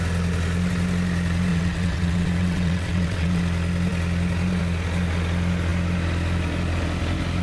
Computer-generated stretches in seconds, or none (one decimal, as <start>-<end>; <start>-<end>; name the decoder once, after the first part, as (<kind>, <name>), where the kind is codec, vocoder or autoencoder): 1.5-3.4 (vocoder, WaveNeXt)